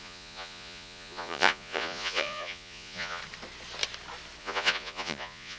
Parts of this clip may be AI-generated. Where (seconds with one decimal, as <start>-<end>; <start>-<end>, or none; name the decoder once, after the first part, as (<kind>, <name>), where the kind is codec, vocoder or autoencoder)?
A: 0.0-3.2 (vocoder, Vocos); 4.4-5.6